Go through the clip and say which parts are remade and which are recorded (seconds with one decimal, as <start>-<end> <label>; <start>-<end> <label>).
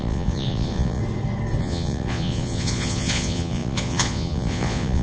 0.0-1.0 remade; 1.0-1.6 recorded; 1.6-5.0 remade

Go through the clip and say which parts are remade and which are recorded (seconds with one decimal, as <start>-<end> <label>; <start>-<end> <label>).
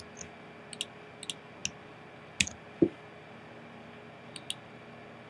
0.0-5.3 recorded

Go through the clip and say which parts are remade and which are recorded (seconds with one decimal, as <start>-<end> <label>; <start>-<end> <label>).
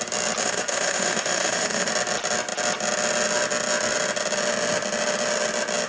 0.0-0.4 recorded; 0.4-1.9 remade; 1.9-5.9 recorded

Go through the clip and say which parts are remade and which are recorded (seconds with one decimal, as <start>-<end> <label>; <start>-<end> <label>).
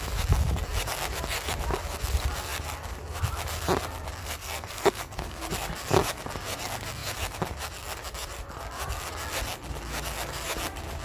0.0-4.2 recorded; 4.2-5.5 remade; 5.5-11.0 recorded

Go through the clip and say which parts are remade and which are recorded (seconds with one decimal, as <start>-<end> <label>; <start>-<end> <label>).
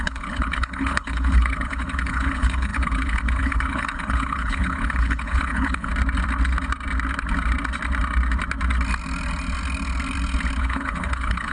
0.0-5.9 remade; 5.9-10.6 recorded; 10.6-11.5 remade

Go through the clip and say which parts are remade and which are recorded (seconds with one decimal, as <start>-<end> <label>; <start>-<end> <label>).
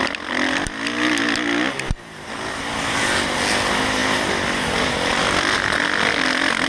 0.0-6.7 recorded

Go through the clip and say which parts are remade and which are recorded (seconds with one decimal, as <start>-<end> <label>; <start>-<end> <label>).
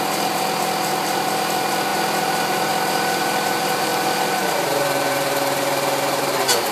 0.0-6.7 remade